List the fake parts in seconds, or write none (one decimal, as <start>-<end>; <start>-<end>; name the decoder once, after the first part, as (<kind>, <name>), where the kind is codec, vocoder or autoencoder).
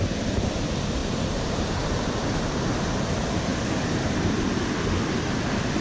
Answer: none